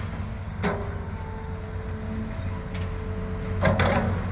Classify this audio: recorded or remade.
recorded